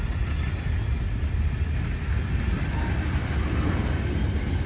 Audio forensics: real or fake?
real